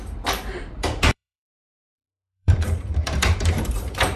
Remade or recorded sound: remade